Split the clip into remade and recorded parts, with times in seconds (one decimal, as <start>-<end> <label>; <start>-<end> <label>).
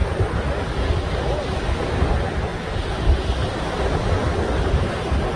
0.0-5.4 recorded